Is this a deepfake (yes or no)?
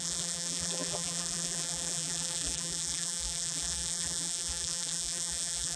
yes